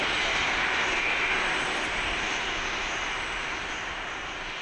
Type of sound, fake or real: real